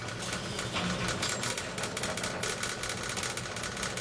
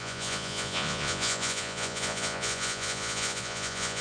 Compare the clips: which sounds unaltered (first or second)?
first